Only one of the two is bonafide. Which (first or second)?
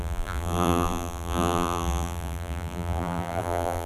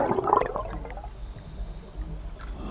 second